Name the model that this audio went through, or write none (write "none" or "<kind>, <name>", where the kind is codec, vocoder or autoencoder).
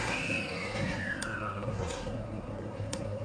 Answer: codec, SNAC